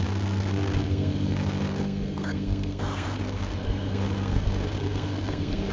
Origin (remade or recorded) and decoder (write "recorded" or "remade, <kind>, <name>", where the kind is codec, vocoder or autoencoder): remade, codec, SNAC